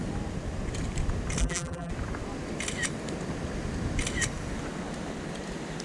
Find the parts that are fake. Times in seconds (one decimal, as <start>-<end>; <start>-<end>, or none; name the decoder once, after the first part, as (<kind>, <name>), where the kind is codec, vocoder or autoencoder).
1.4-1.9 (vocoder, BigVGAN v2)